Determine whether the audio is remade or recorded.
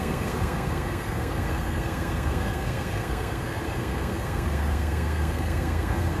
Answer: remade